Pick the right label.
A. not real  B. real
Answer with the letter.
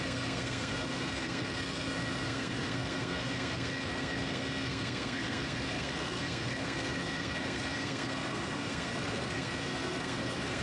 A